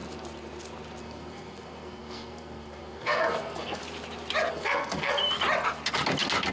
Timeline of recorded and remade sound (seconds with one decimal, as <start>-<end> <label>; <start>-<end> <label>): 0.0-1.0 recorded; 1.0-3.8 remade; 3.8-4.5 recorded; 4.5-5.2 remade; 5.2-6.5 recorded